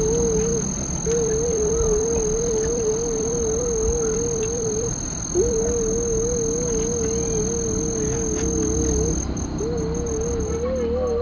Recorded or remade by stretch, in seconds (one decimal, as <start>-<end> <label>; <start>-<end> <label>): 0.0-0.5 recorded; 0.5-5.6 remade; 5.6-11.2 recorded